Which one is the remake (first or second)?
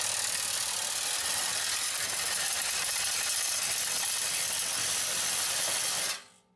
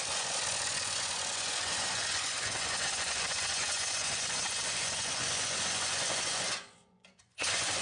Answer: second